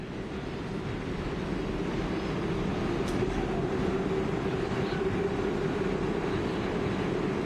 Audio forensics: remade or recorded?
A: recorded